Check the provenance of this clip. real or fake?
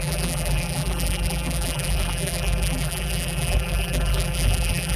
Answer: fake